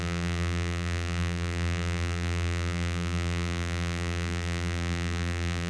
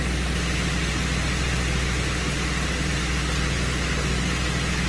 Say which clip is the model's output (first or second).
first